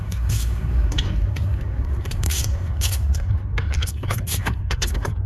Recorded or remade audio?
remade